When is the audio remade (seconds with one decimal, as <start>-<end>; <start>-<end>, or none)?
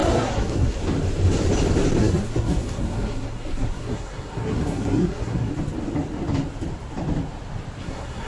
0.0-0.8; 2.0-5.5; 7.8-8.3